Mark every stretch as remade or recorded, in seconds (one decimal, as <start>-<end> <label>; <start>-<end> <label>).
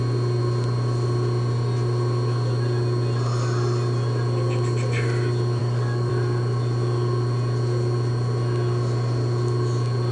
0.0-5.6 recorded; 5.6-6.1 remade; 6.1-10.1 recorded